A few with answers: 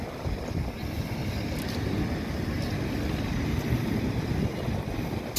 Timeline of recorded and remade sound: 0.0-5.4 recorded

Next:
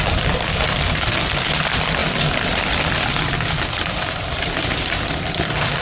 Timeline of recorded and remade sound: 0.0-2.0 remade; 2.0-5.2 recorded; 5.2-5.8 remade

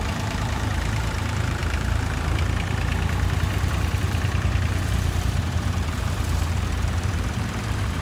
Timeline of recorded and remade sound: 0.0-8.0 remade

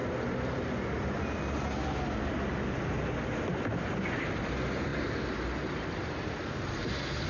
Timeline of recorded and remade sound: 0.0-4.2 recorded; 4.2-7.3 remade

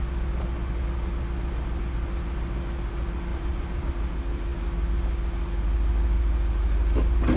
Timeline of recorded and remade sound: 0.0-3.3 recorded; 3.3-3.9 remade; 3.9-7.4 recorded

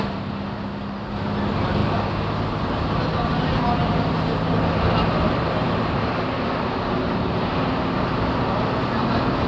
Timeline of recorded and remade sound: 0.0-9.5 recorded